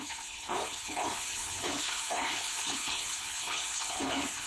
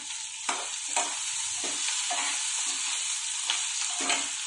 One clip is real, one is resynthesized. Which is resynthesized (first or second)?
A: first